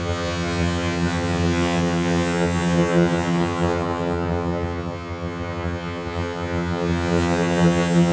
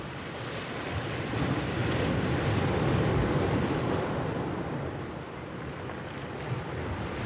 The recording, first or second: second